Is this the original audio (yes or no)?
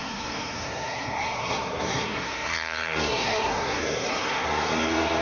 no